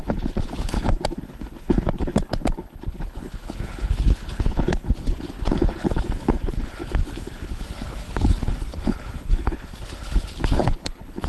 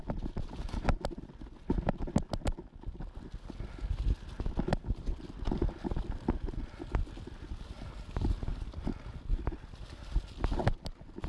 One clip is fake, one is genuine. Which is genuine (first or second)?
second